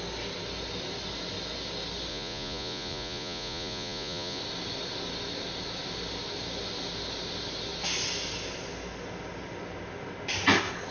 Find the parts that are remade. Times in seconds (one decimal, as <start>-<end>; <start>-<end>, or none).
2.1-4.4